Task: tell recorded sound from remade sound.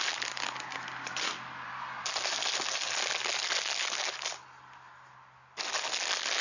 recorded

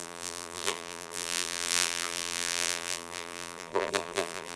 remade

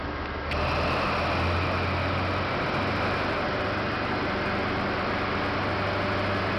recorded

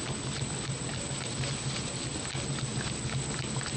recorded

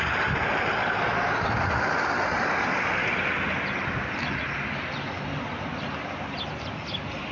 recorded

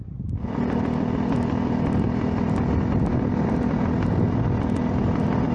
recorded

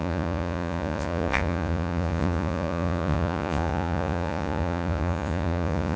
remade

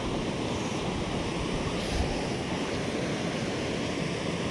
recorded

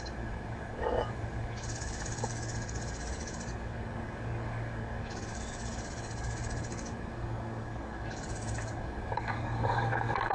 remade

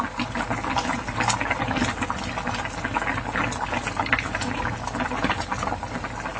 recorded